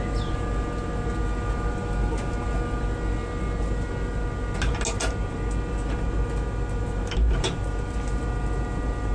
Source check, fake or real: real